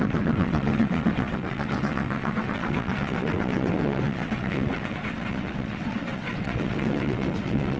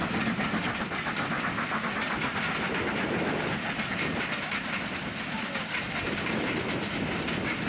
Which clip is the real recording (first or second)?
second